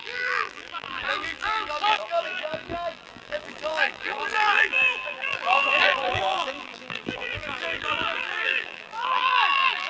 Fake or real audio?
fake